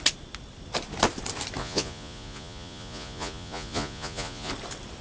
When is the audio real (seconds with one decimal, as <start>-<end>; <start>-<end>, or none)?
0.0-1.6; 4.5-5.0